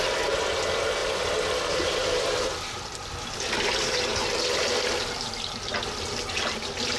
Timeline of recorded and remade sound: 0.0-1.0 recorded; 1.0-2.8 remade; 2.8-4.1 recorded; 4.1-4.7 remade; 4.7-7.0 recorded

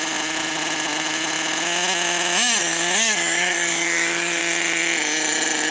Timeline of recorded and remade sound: 0.0-2.6 recorded; 2.6-4.4 remade; 4.4-5.7 recorded

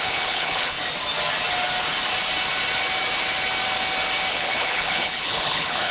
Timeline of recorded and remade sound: 0.0-0.8 remade; 0.8-4.3 recorded; 4.3-5.9 remade

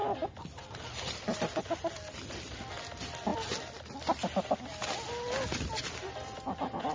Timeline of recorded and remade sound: 0.0-2.7 remade; 2.7-6.9 recorded

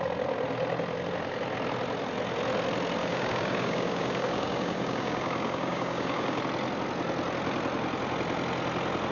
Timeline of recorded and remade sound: 0.0-3.0 recorded; 3.0-6.4 remade; 6.4-9.1 recorded